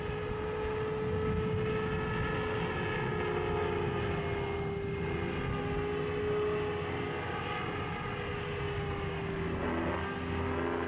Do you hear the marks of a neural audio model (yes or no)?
no